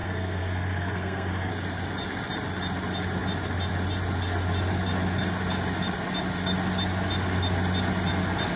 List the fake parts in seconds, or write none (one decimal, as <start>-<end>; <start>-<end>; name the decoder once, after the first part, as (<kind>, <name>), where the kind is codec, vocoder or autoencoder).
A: 0.0-1.5 (codec, SNAC)